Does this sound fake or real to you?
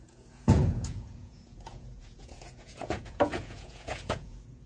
fake